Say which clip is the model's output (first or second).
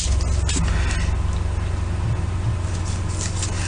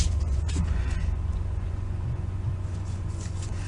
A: second